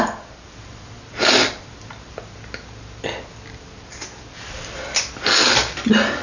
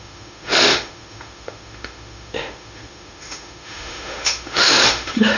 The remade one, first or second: second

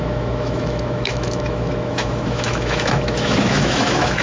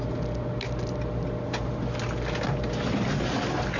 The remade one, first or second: first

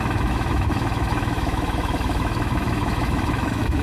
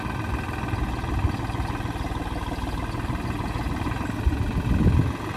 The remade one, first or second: first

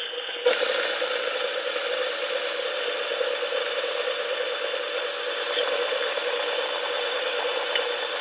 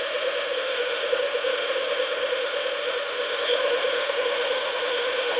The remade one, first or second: second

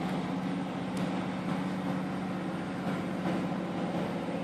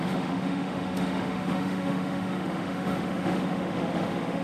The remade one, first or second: second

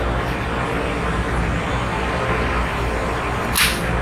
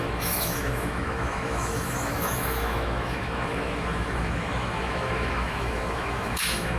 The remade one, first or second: second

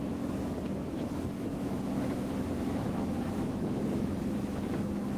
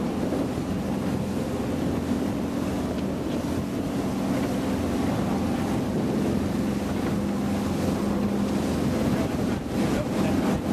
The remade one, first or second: first